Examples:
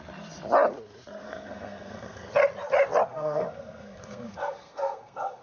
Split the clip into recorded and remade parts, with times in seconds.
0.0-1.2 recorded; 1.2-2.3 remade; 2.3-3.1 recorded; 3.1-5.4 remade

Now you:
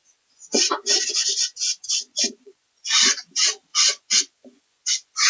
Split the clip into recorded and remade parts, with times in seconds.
0.0-3.2 remade; 3.2-3.7 recorded; 3.7-5.3 remade

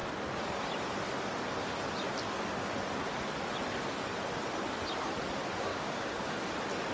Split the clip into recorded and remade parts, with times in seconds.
0.0-5.7 recorded; 5.7-6.3 remade; 6.3-6.9 recorded

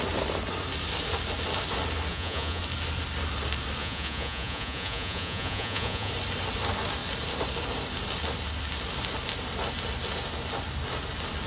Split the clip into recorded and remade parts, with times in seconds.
0.0-2.1 recorded; 2.1-2.6 remade; 2.6-3.8 recorded; 3.8-6.1 remade; 6.1-11.5 recorded

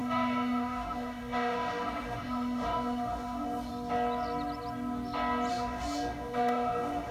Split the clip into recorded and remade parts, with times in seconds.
0.0-3.7 remade; 3.7-5.5 recorded; 5.5-7.1 remade